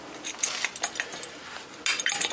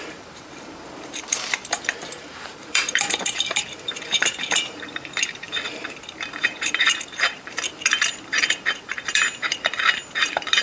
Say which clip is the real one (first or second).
first